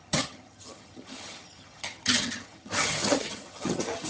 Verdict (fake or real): fake